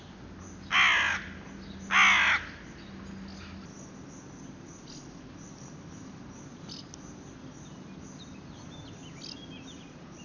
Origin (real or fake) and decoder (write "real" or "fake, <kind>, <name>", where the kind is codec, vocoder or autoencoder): real